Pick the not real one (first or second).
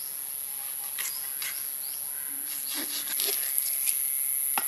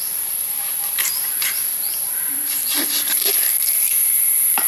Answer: second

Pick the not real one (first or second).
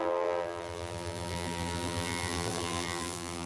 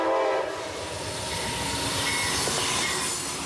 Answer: first